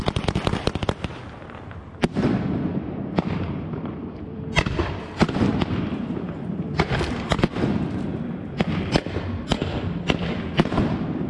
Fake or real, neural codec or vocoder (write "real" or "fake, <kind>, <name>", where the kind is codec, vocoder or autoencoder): fake, vocoder, BigVGAN v2